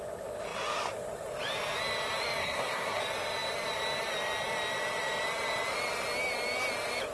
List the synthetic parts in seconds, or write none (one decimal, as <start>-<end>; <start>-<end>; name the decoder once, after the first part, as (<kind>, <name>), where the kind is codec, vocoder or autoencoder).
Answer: 2.4-3.0 (codec, SNAC)